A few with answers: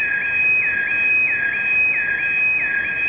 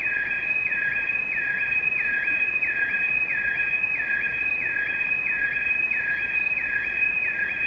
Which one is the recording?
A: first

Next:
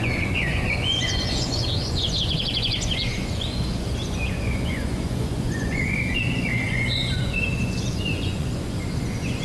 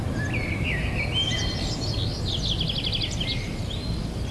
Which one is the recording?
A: second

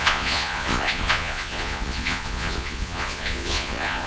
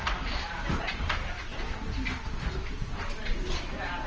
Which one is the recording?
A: second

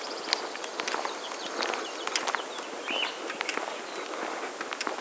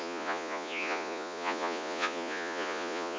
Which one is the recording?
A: first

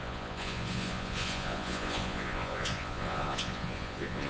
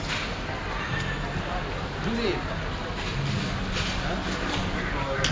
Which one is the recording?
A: second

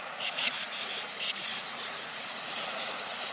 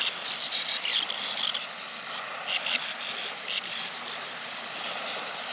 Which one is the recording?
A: second